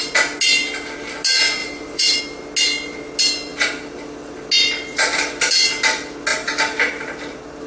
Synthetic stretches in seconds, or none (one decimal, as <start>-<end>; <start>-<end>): 1.6-2.2

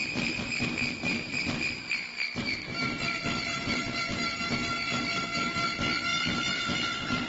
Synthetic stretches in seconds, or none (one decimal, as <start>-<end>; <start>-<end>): 0.0-4.4; 6.1-7.3

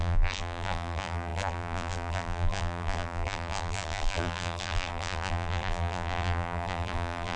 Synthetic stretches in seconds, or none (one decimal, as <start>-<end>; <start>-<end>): 0.0-7.4

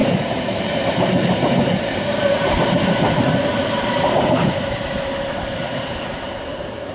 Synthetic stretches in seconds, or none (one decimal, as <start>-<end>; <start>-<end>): 0.0-6.9

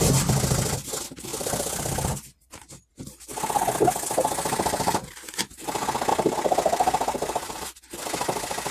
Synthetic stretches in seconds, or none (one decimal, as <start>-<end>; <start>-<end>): 1.3-2.9; 6.1-8.0

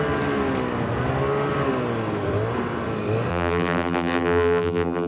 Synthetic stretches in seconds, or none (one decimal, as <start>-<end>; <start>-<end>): 3.3-5.1

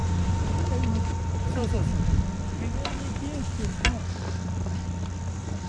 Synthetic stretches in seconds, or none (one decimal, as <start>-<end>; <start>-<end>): 0.0-1.9; 5.3-5.7